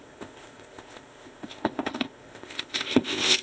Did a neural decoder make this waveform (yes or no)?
yes